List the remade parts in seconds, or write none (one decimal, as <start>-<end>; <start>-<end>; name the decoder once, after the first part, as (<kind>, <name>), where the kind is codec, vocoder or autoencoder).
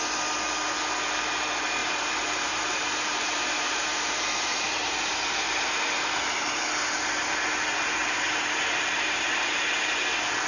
1.8-6.6 (vocoder, BigVGAN v2); 8.0-9.6